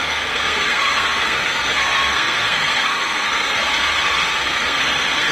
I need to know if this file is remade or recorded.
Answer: remade